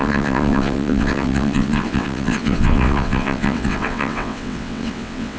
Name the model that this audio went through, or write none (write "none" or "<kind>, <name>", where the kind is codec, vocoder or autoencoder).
vocoder, WaveNeXt